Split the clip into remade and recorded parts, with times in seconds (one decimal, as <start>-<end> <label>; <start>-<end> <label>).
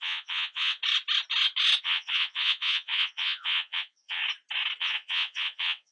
0.0-0.8 remade; 0.8-1.8 recorded; 1.8-4.2 remade; 4.2-4.8 recorded; 4.8-5.9 remade